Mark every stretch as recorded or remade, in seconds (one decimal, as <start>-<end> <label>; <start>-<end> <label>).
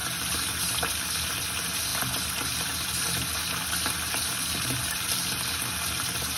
0.0-6.4 recorded